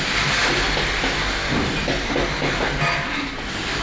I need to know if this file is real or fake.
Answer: real